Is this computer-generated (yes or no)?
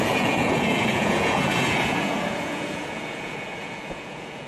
yes